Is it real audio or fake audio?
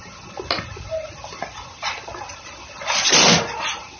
real